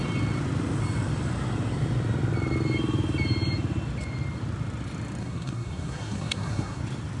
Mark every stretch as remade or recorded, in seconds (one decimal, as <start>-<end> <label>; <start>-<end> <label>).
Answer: 0.0-5.2 recorded; 5.2-6.8 remade; 6.8-7.2 recorded